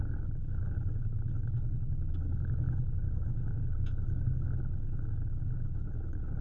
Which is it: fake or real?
fake